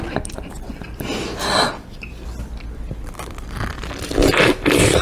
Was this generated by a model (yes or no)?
no